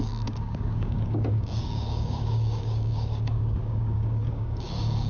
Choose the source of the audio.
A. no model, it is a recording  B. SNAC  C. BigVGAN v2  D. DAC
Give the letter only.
D